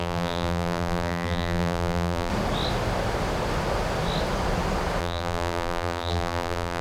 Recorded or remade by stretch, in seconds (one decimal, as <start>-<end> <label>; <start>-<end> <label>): 0.0-2.3 remade; 2.3-5.0 recorded; 5.0-6.8 remade